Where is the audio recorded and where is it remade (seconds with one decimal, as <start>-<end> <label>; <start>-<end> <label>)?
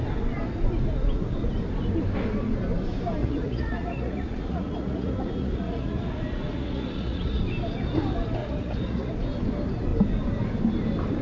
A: 0.0-3.2 recorded; 3.2-7.4 remade; 7.4-8.4 recorded; 8.4-9.1 remade; 9.1-11.2 recorded